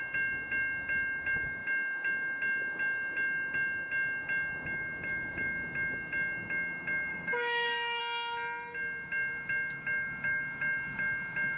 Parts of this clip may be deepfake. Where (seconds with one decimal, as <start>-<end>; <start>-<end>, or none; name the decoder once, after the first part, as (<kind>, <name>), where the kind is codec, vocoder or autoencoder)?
7.1-8.0 (codec, DAC)